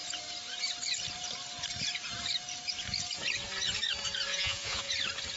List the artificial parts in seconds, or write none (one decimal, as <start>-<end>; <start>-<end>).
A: 4.3-4.9

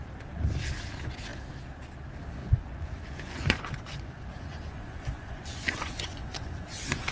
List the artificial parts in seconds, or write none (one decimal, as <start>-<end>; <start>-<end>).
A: 2.4-7.1

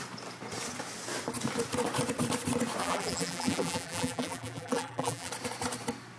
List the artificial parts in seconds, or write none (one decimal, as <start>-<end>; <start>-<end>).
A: 2.8-5.3

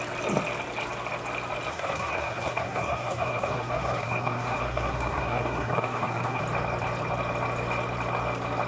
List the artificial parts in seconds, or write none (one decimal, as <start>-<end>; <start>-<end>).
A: 1.7-6.4

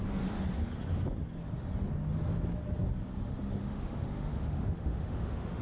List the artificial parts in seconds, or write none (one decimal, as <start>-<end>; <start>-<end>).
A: 3.6-5.6

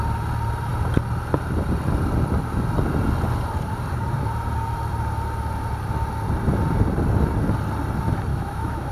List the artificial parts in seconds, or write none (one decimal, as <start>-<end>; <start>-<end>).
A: 8.3-8.9